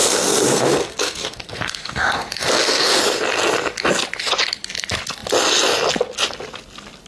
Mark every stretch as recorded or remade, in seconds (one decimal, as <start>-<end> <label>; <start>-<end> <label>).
0.0-3.0 remade; 3.0-7.1 recorded